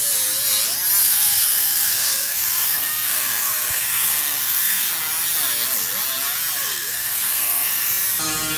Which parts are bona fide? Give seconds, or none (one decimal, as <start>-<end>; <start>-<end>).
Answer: 0.0-1.0; 4.9-6.7; 7.9-8.6